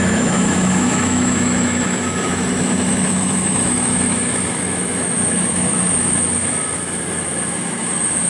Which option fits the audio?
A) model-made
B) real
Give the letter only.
A